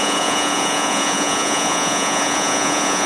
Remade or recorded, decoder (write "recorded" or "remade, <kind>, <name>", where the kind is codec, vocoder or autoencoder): remade, vocoder, Vocos